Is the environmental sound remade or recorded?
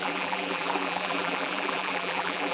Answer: remade